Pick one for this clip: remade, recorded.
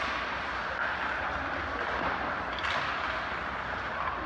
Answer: recorded